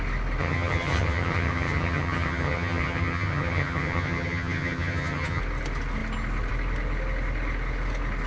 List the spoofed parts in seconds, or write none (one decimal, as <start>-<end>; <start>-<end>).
0.4-5.4

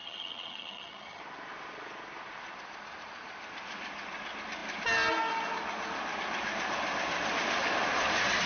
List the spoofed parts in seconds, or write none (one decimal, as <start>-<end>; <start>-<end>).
0.0-1.2

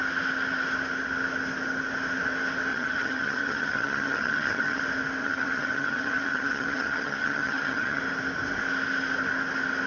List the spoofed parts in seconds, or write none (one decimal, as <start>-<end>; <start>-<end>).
2.7-4.8; 5.2-8.0

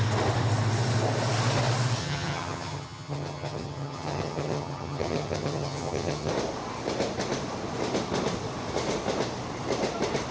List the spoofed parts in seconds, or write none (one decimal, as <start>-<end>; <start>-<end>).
2.0-6.3

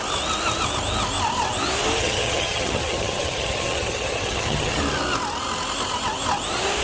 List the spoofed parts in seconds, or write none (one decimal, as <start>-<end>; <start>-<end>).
2.0-4.8

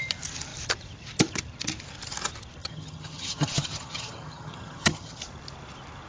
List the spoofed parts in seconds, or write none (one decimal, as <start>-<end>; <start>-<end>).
2.6-5.2

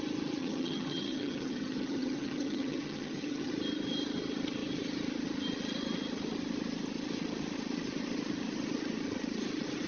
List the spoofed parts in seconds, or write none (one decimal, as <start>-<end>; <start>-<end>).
0.4-3.5